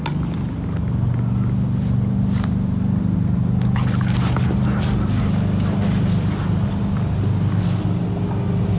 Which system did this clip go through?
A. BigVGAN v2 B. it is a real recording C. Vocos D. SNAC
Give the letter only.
B